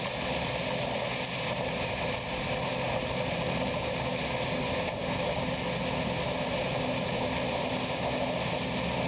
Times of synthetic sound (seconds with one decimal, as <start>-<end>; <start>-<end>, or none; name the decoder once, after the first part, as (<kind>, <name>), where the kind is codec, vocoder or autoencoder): none